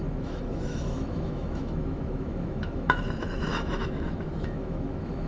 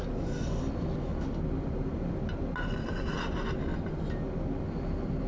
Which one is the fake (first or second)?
first